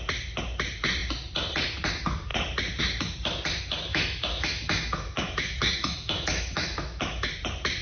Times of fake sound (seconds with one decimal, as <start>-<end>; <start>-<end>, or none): 3.9-7.3